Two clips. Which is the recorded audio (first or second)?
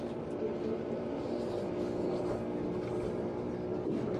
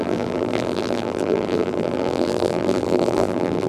first